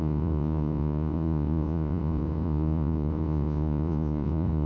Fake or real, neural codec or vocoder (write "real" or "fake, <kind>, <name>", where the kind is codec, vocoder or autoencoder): fake, vocoder, Vocos